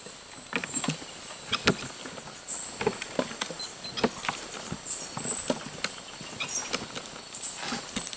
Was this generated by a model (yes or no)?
no